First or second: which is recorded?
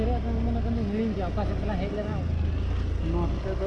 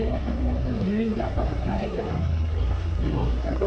first